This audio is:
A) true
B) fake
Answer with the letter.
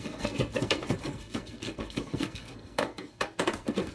B